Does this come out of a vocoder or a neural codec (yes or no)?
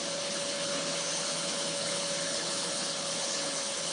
yes